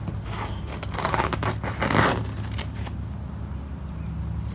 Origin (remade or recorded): recorded